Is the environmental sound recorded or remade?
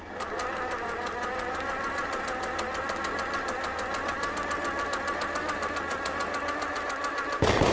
recorded